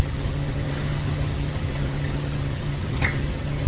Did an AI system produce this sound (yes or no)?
yes